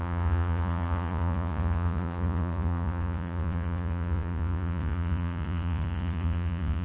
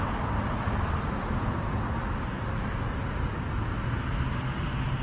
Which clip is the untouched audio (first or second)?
second